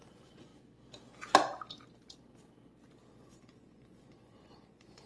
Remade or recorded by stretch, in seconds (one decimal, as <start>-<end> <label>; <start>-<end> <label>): 0.0-0.5 remade; 0.5-3.1 recorded; 3.1-5.1 remade